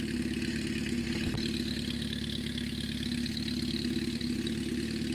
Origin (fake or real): real